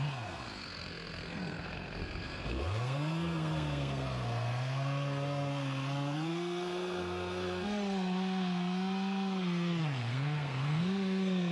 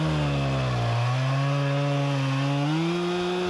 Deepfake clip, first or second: first